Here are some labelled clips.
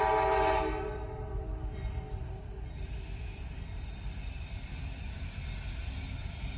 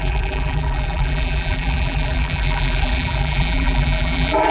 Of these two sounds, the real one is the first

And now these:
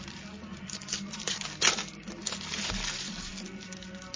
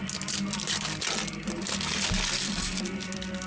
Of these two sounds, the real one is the second